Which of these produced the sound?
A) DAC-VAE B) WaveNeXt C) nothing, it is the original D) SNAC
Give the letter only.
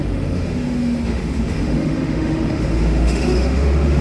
A